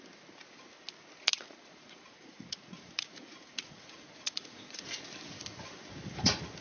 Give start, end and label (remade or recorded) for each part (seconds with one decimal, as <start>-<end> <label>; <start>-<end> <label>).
0.0-1.3 recorded; 1.3-4.8 remade; 4.8-6.6 recorded

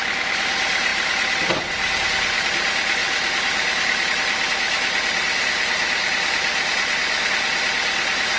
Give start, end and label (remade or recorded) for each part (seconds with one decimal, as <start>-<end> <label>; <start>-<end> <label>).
0.0-8.4 recorded

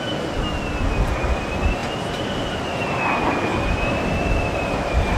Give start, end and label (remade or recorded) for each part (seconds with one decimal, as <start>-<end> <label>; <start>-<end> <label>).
0.0-5.2 recorded

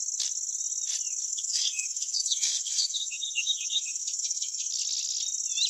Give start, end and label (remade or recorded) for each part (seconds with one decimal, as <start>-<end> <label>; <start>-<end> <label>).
0.0-1.3 recorded; 1.3-4.7 remade; 4.7-5.7 recorded